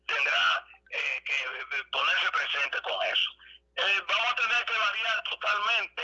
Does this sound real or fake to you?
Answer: real